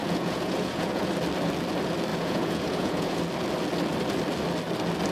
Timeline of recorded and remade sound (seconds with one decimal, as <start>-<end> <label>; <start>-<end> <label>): 0.0-1.1 remade; 1.1-2.1 recorded; 2.1-3.2 remade; 3.2-5.1 recorded